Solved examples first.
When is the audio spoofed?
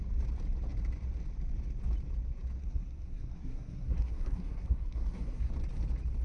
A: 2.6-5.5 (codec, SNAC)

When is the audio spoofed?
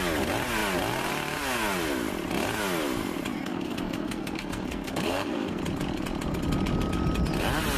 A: 3.3-5.6 (codec, SNAC)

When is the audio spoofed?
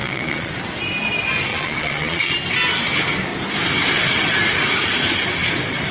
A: 0.0-0.5 (vocoder, Vocos); 1.5-2.3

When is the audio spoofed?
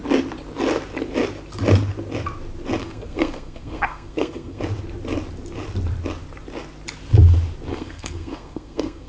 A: 2.8-4.6 (codec, SNAC); 7.7-9.1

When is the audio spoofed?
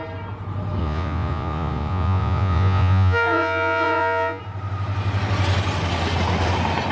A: 0.8-4.4 (vocoder, Vocos)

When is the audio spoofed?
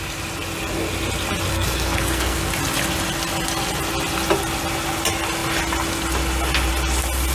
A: 1.5-2.5 (codec, SNAC)